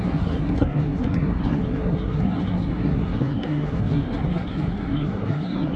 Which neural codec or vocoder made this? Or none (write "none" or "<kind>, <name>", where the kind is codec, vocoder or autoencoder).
codec, SNAC